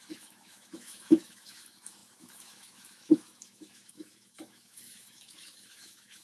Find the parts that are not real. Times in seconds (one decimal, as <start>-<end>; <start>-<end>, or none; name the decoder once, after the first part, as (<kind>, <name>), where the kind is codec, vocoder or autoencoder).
0.0-6.2 (autoencoder, DAC-VAE)